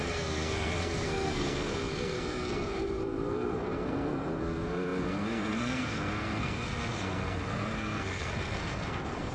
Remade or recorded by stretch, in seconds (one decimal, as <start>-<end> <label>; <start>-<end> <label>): 0.0-9.3 remade